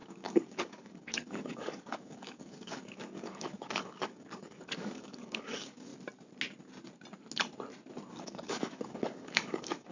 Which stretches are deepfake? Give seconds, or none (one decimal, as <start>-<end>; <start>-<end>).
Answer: 0.0-5.9; 8.1-9.9